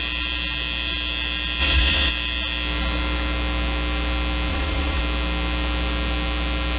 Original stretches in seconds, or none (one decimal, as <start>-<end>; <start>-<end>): 0.0-1.6; 2.1-4.5; 5.0-6.8